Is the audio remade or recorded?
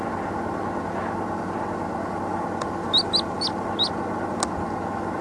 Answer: recorded